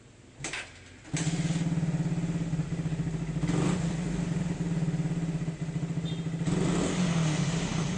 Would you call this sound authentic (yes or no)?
yes